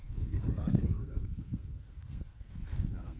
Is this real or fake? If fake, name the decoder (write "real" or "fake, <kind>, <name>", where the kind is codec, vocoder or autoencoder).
fake, codec, SNAC